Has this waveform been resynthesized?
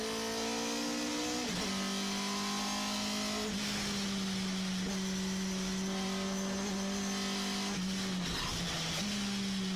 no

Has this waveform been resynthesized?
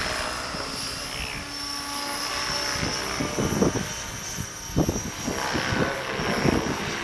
no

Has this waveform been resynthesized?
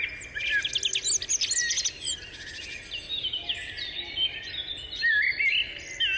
no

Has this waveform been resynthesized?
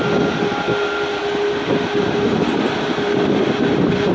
no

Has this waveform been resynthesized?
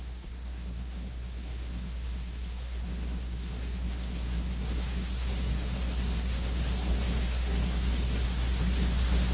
yes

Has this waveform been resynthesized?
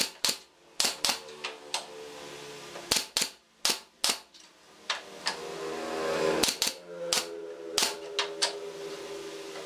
no